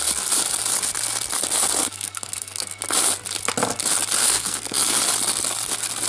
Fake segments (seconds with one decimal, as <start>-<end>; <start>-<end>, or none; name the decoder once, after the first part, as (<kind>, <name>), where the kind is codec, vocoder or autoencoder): 1.8-2.8 (codec, SNAC); 4.2-5.0

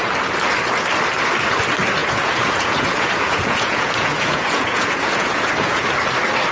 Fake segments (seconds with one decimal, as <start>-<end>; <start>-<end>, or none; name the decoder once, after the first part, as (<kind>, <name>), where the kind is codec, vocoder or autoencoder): 2.0-5.9 (vocoder, Vocos)

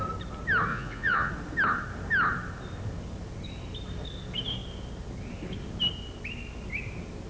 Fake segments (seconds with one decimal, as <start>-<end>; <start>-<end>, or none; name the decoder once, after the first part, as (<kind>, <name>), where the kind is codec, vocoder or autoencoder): 0.7-1.3 (vocoder, Vocos)

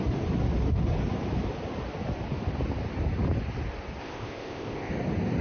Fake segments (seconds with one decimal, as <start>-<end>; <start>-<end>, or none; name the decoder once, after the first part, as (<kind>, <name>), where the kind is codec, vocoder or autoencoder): 4.0-4.9 (codec, ZipCodec)